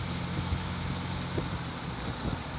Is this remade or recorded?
recorded